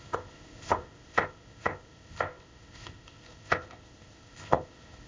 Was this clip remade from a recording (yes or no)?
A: yes